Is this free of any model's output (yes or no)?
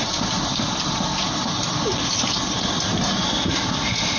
yes